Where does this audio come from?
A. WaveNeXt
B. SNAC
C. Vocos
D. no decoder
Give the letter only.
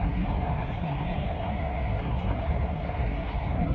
B